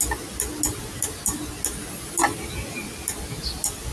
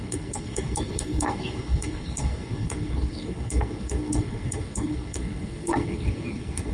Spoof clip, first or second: second